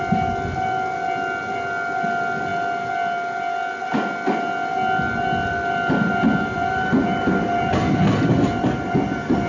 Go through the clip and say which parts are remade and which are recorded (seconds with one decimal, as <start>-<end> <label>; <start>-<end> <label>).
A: 0.0-9.5 recorded